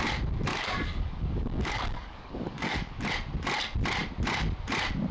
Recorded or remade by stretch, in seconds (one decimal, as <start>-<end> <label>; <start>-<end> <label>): 0.0-0.5 recorded; 0.5-3.1 remade; 3.1-5.1 recorded